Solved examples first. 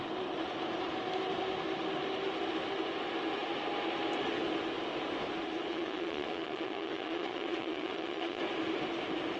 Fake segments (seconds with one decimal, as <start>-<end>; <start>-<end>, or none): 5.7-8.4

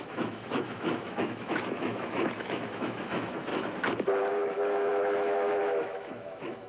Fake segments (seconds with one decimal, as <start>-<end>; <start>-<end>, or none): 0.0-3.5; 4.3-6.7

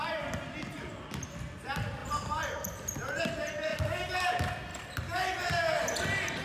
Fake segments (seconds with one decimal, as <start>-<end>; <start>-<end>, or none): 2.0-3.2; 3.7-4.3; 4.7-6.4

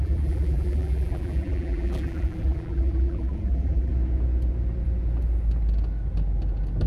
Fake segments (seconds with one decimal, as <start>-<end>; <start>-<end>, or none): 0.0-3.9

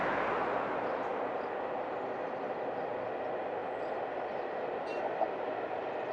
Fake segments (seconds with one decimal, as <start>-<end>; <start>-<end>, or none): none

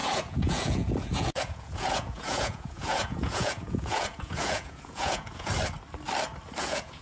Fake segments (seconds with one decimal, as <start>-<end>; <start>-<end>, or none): 0.0-5.5; 6.6-7.0

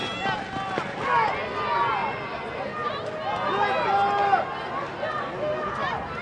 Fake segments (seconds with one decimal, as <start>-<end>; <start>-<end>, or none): none